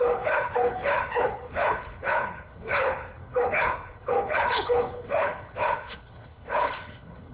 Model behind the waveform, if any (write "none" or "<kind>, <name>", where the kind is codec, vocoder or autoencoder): codec, HILCodec